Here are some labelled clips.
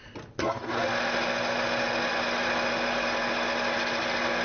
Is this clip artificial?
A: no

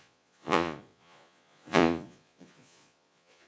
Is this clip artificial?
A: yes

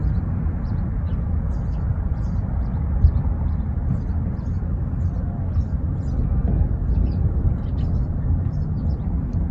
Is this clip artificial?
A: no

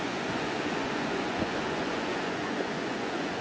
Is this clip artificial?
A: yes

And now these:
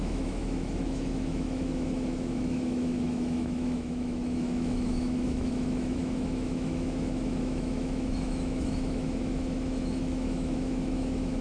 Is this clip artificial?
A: yes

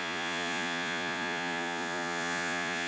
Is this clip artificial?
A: yes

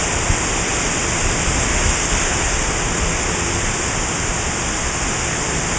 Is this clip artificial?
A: no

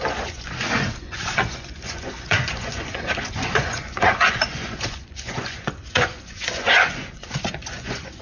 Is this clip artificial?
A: yes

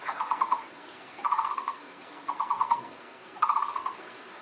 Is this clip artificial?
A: yes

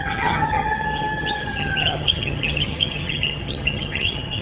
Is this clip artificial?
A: yes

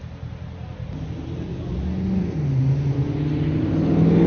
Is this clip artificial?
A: no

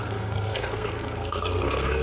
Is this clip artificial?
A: yes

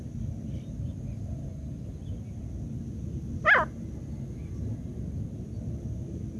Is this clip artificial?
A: no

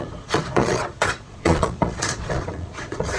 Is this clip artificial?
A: yes